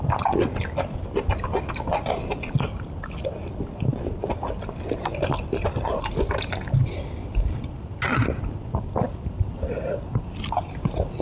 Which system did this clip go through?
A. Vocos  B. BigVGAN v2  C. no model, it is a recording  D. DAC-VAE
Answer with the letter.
C